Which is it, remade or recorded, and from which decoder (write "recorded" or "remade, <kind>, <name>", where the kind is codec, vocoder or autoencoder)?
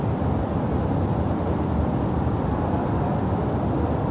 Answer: recorded